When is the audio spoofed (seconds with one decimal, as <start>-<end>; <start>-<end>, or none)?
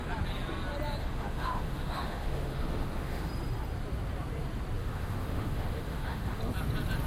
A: 1.0-3.3; 4.8-6.4